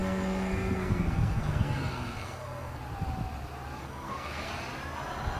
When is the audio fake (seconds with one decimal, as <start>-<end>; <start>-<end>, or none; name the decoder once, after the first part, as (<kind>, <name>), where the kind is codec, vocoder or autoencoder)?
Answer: 0.0-2.8 (codec, SNAC); 3.8-4.5

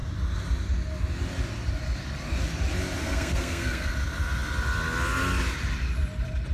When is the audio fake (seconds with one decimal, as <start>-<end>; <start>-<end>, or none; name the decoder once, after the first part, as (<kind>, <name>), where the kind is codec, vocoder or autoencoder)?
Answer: 3.0-3.9 (codec, SNAC)

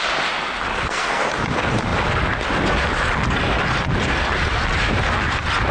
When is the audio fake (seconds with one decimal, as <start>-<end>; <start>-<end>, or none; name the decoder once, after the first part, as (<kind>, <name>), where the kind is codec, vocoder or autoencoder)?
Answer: 0.7-1.2 (codec, SNAC)

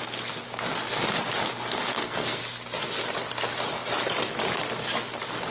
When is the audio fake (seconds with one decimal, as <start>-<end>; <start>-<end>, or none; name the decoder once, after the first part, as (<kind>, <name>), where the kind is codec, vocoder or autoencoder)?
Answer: 1.9-2.4 (codec, SNAC)

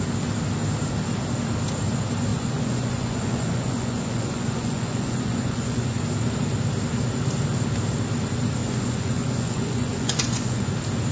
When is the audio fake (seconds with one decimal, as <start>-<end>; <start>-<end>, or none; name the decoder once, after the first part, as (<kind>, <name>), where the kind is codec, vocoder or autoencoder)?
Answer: 2.3-6.0 (vocoder, Vocos); 8.6-10.7